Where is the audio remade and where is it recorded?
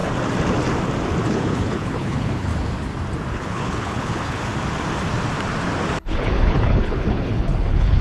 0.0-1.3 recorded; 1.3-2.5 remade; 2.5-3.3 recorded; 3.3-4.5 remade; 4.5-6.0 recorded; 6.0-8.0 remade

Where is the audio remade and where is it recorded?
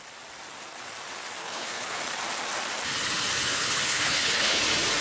0.0-1.4 recorded; 1.4-2.0 remade; 2.0-3.5 recorded; 3.5-4.6 remade; 4.6-5.0 recorded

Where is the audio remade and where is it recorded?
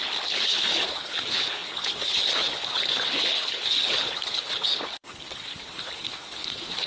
0.0-6.9 remade